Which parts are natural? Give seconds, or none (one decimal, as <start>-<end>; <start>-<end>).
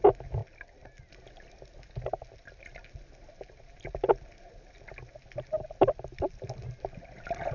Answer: 0.0-7.5